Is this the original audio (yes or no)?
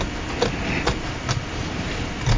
yes